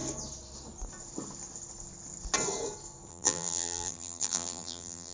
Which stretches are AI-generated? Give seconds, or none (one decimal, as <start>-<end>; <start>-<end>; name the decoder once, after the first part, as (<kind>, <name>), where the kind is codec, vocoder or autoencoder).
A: 3.1-5.1 (vocoder, BigVGAN v2)